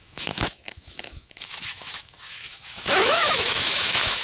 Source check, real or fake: fake